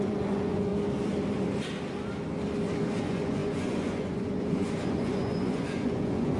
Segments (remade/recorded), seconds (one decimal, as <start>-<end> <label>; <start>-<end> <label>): 0.0-0.7 remade; 0.7-3.0 recorded; 3.0-6.4 remade